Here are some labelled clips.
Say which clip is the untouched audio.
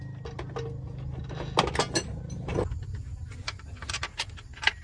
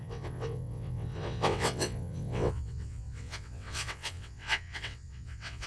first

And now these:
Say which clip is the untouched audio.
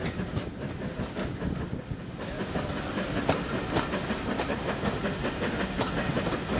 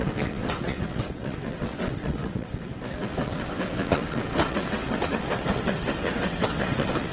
first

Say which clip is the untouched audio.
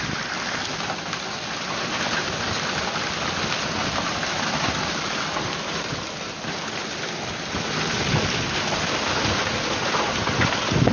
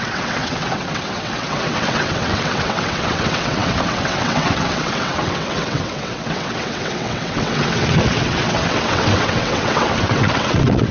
first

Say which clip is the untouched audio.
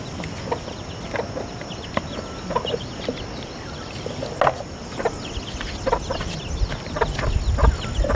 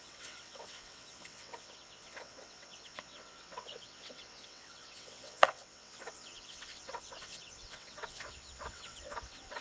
first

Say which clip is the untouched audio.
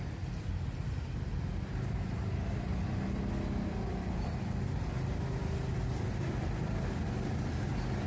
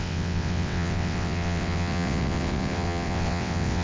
first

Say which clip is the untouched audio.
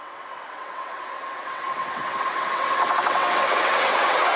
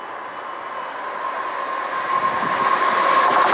second